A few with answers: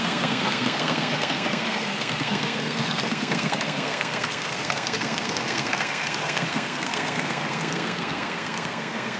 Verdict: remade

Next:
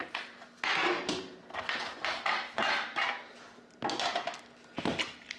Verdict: recorded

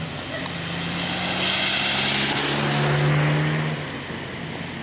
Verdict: recorded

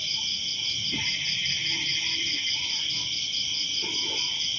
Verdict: recorded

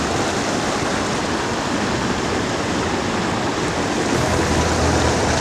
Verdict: recorded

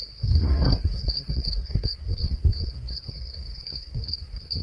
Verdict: remade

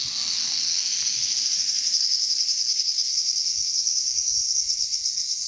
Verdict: remade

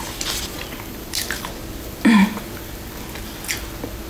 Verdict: recorded